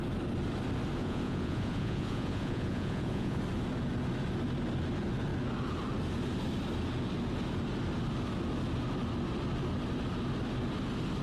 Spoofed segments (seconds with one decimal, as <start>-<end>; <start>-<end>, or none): 1.0-3.4